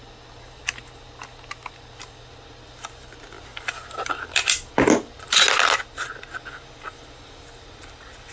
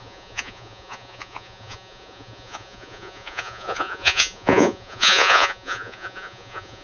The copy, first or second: second